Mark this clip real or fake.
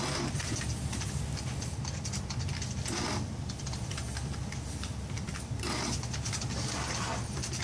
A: real